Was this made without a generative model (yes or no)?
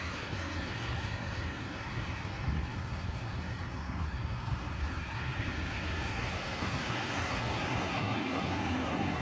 no